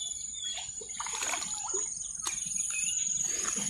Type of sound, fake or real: real